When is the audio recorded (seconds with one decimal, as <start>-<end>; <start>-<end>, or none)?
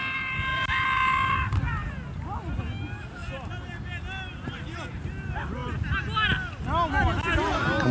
0.0-7.9